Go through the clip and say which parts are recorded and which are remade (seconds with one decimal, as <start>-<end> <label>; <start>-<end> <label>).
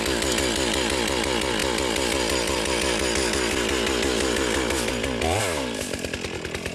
0.0-6.7 recorded